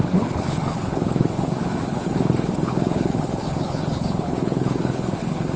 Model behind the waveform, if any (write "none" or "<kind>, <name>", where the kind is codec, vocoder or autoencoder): codec, HILCodec